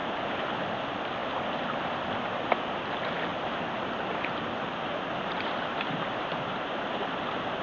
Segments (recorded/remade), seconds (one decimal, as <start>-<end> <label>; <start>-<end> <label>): 0.0-0.6 remade; 0.6-3.3 recorded; 3.3-7.1 remade; 7.1-7.6 recorded